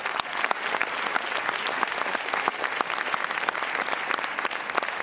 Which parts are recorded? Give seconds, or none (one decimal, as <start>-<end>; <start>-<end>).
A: 0.0-5.0